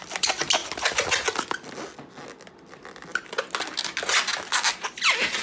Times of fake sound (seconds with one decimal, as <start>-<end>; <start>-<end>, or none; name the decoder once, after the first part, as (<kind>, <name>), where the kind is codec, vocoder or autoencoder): none